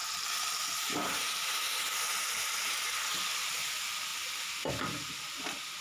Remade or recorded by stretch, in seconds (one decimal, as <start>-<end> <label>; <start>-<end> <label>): 0.0-5.8 recorded